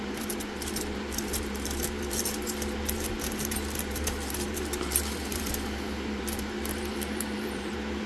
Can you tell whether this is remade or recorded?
remade